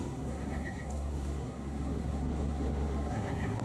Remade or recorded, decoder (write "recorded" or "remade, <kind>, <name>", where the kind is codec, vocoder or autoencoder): remade, codec, SNAC